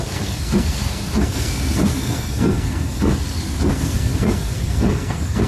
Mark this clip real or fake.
fake